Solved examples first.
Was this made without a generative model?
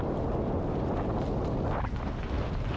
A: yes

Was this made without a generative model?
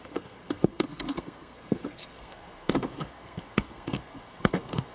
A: no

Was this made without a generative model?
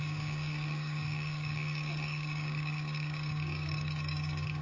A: no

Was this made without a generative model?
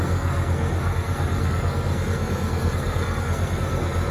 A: no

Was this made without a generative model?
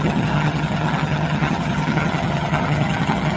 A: no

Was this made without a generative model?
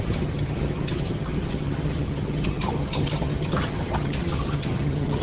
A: no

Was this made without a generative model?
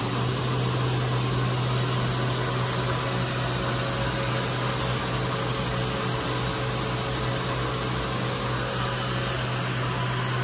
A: yes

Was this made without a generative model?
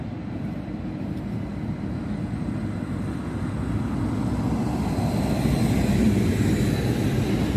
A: yes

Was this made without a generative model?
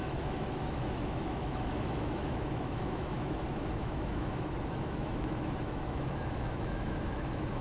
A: no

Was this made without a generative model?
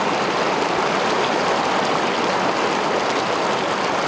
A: yes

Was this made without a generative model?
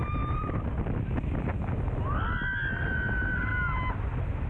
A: yes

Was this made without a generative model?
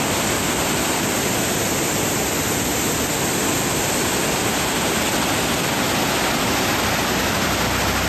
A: yes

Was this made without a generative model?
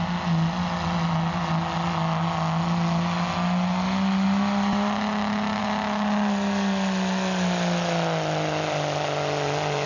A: yes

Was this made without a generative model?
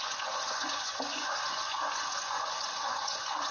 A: no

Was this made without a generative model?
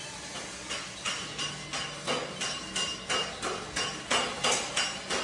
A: yes